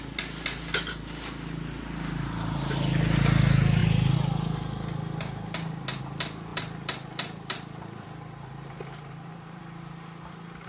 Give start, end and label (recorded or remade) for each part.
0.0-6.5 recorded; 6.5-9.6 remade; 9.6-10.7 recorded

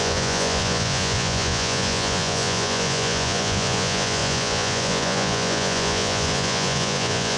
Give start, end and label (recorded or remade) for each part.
0.0-7.4 remade

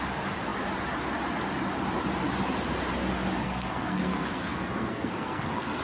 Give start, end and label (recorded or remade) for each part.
0.0-3.4 recorded; 3.4-5.8 remade